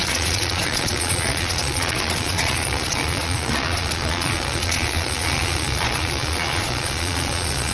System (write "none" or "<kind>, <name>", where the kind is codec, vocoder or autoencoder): vocoder, Vocos